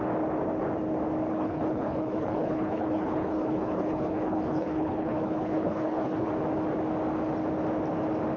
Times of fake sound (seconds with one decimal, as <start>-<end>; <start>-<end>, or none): 1.3-6.3